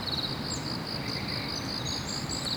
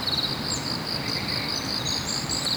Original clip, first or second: first